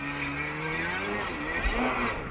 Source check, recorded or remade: recorded